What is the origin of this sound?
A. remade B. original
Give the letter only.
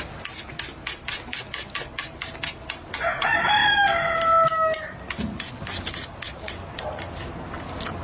B